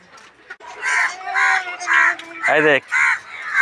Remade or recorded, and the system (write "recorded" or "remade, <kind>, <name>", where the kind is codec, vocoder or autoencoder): recorded